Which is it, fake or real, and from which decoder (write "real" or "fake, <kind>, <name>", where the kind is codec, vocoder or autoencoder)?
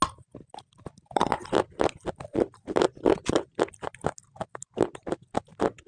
real